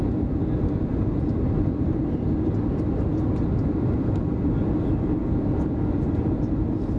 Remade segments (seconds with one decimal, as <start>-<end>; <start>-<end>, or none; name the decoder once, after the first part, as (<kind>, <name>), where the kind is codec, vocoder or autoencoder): 5.2-5.8 (vocoder, BigVGAN v2)